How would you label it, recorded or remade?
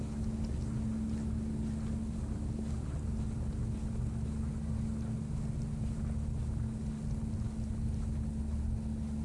recorded